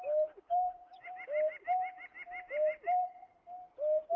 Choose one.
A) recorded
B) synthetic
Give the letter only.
A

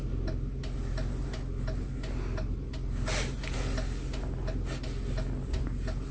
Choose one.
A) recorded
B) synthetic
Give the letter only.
A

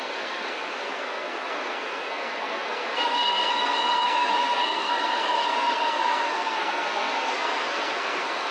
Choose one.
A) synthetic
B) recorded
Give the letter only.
A